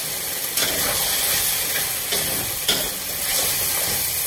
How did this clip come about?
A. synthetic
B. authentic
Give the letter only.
B